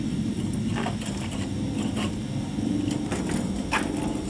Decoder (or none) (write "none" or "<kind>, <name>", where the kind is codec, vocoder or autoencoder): none